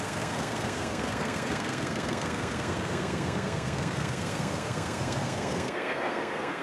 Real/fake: fake